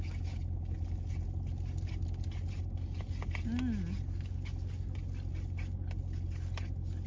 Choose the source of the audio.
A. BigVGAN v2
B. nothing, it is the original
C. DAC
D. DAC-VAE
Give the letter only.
B